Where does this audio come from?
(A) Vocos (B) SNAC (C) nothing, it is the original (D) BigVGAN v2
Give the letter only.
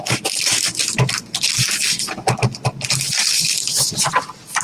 C